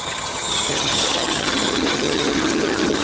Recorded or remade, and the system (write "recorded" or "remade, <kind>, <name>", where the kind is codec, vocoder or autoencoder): remade, vocoder, HiFi-GAN